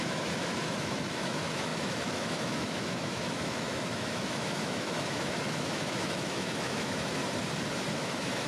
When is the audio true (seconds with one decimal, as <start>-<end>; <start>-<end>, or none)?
7.2-7.9